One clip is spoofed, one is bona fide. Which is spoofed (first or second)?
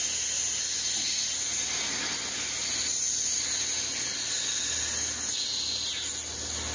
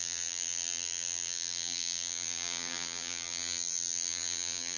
second